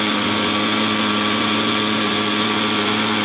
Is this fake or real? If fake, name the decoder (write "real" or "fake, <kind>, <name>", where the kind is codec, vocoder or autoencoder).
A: fake, vocoder, Vocos